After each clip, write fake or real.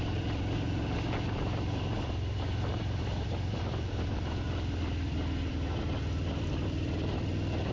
fake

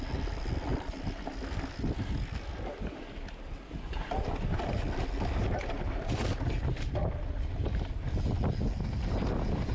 real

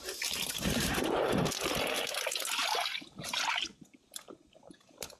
real